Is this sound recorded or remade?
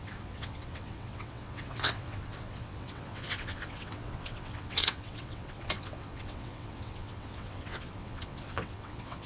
remade